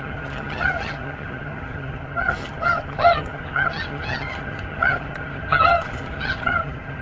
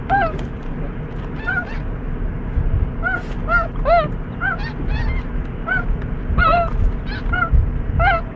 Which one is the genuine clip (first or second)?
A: second